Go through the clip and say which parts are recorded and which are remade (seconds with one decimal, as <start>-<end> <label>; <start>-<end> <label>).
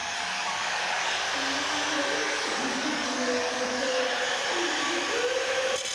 0.0-1.2 remade; 1.2-2.2 recorded; 2.2-4.0 remade; 4.0-5.9 recorded